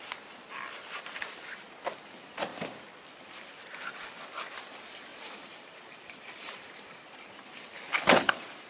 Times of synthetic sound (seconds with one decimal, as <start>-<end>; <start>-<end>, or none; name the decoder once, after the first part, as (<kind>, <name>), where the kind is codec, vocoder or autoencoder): 5.1-7.2 (vocoder, BigVGAN v2)